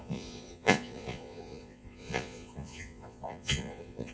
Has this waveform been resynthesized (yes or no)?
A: yes